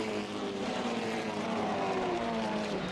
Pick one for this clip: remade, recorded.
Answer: remade